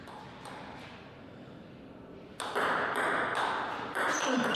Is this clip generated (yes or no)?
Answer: no